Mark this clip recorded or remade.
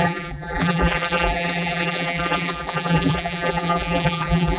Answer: remade